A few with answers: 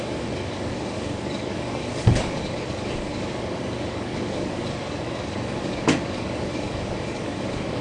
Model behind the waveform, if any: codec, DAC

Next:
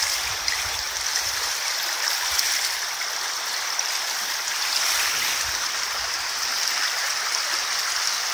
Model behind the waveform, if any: vocoder, BigVGAN v2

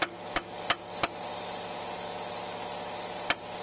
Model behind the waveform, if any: none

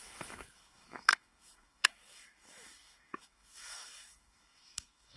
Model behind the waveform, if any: autoencoder, DAC-VAE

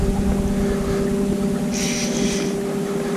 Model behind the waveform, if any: none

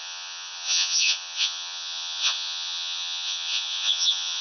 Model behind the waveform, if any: vocoder, Vocos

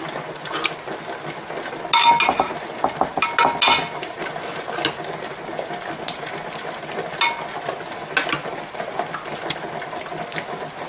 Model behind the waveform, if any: none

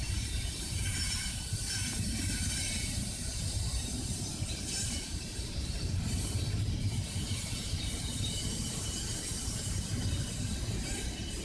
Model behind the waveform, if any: vocoder, BigVGAN v2